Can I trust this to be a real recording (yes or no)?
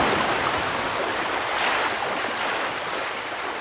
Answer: yes